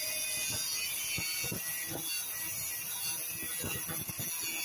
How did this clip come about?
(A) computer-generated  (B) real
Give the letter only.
B